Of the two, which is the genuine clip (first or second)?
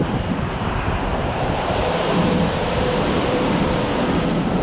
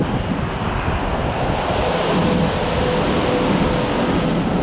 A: second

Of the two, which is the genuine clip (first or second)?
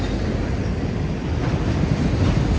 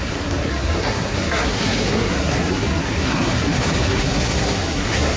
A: first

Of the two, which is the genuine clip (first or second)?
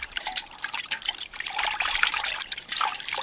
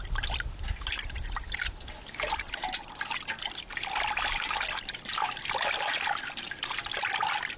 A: second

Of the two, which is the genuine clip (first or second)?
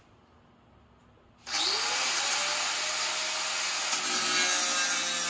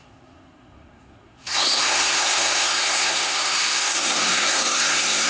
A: first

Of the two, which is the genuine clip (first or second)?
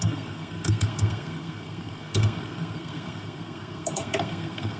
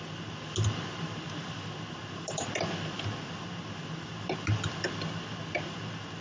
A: second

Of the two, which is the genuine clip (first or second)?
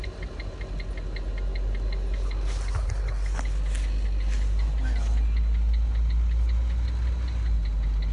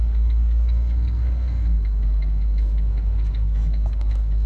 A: first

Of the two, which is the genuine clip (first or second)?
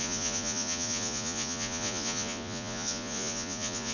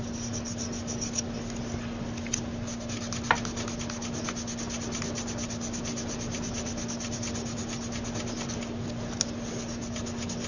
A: second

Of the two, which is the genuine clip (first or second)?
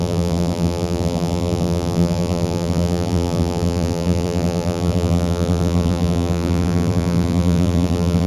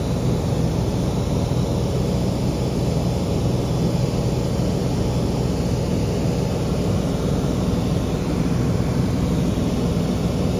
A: second